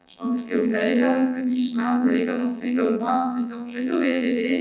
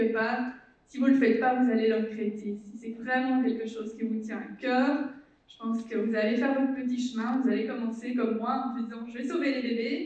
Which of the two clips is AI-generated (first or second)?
first